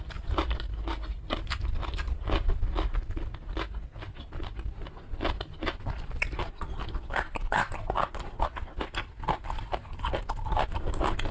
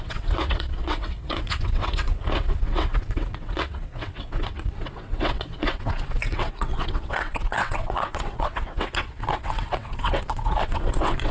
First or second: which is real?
first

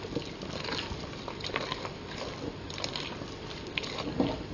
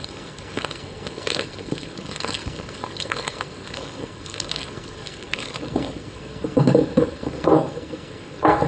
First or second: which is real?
first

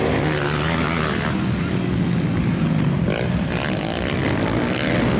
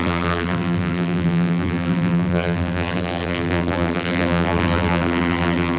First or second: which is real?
first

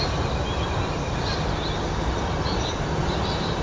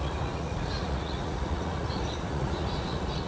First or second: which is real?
first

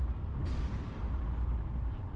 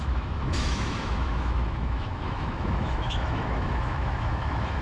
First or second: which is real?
first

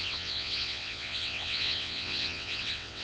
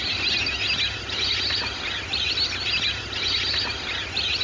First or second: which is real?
second